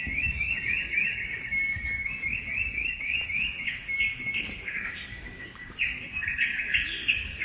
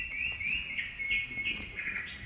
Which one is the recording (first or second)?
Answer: second